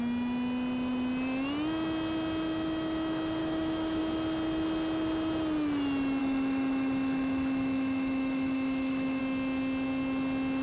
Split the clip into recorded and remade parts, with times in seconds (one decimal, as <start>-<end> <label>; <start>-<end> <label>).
0.0-3.4 recorded; 3.4-4.0 remade; 4.0-6.2 recorded; 6.2-9.2 remade; 9.2-10.6 recorded